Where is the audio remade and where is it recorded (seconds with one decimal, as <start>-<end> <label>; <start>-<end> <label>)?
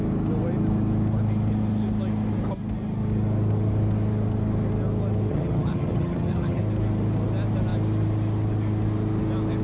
0.0-5.3 recorded; 5.3-6.6 remade; 6.6-9.6 recorded